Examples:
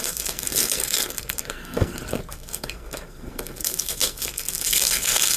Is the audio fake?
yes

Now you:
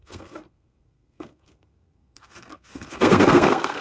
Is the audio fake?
yes